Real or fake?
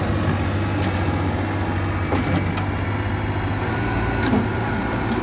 real